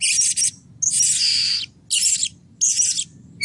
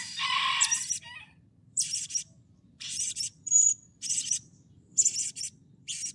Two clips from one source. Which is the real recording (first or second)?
first